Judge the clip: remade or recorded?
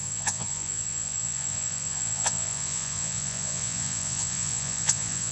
remade